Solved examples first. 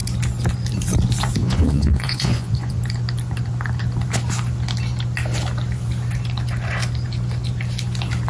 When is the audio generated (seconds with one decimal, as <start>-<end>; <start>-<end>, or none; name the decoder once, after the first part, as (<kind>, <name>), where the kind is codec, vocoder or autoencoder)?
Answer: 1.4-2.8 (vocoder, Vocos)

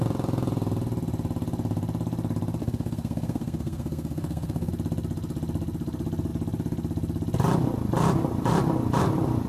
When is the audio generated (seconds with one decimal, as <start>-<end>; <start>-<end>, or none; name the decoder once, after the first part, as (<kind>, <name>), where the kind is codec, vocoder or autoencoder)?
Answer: 2.6-4.7 (codec, SNAC)

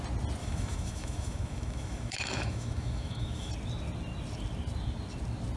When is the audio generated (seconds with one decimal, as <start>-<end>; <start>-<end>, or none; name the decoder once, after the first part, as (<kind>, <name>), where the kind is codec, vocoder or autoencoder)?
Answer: 0.4-3.5 (autoencoder, DAC-VAE)

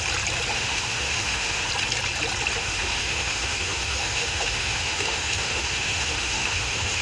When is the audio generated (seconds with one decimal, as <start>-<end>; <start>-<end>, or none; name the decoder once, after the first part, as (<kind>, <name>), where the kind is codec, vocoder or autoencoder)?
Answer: 0.5-1.7 (autoencoder, DAC-VAE); 2.6-7.0

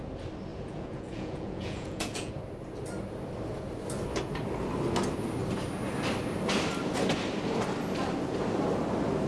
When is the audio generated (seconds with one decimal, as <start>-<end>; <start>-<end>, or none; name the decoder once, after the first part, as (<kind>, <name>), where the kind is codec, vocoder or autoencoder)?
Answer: 0.5-2.3 (vocoder, Vocos)

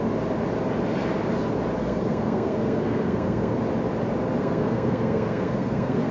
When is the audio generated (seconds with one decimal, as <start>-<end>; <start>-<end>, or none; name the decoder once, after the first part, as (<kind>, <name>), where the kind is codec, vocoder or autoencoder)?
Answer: 1.8-3.6 (codec, SNAC); 4.4-6.1

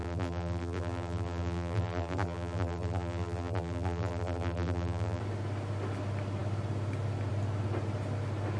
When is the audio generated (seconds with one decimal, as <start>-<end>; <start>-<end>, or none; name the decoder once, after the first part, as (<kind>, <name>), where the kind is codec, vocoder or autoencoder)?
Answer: 0.0-5.2 (vocoder, BigVGAN v2)

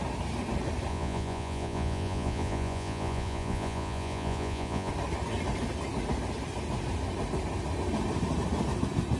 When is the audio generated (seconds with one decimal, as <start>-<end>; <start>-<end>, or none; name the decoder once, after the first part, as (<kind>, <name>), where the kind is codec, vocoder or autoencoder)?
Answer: 0.9-4.9 (vocoder, Vocos)